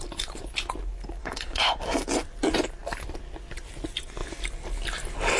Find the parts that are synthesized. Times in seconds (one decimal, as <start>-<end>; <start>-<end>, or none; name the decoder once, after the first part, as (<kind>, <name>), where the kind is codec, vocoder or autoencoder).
1.2-1.8 (codec, HILCodec)